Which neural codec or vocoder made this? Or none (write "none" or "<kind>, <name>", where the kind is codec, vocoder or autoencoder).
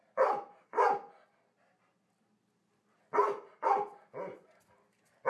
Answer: none